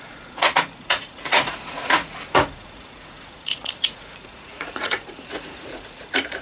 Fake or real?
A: fake